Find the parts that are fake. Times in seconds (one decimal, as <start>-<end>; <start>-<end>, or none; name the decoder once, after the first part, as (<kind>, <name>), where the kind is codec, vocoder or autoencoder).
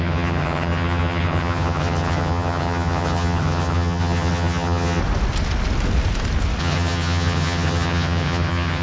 0.0-5.0 (vocoder, HiFi-GAN); 6.6-8.8